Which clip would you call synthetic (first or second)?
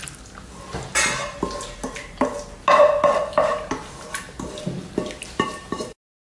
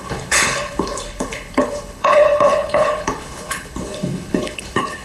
second